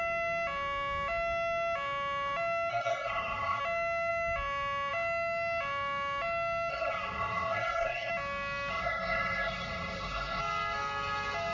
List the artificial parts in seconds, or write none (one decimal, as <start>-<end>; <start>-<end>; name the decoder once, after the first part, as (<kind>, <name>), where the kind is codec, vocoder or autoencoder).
2.7-3.6 (codec, SNAC); 6.7-8.1; 8.7-10.4